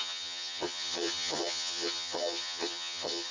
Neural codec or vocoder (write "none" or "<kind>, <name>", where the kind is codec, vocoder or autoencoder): vocoder, HiFi-GAN